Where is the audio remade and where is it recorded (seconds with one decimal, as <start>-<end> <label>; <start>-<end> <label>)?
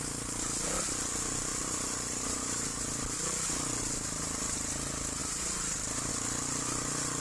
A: 0.0-1.5 recorded; 1.5-3.2 remade; 3.2-5.2 recorded; 5.2-6.1 remade; 6.1-7.2 recorded